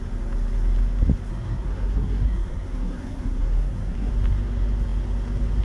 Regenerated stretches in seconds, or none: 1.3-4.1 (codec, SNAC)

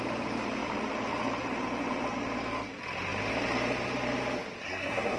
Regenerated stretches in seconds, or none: 4.6-5.2 (codec, SNAC)

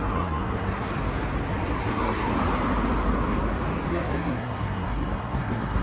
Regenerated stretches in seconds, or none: 0.0-0.9 (codec, SNAC); 1.8-2.3; 3.9-5.8

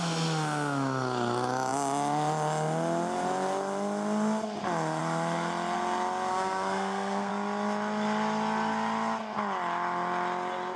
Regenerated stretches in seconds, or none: 6.3-7.3 (codec, SNAC)

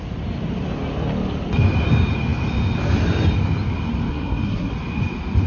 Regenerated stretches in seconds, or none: 4.1-4.7 (codec, SNAC)

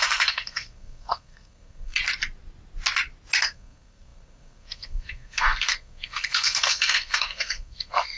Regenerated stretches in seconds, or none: 0.0-2.0 (codec, SNAC); 3.4-8.2

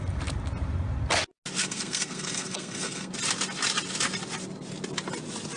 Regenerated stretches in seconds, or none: 1.6-3.1 (codec, SNAC)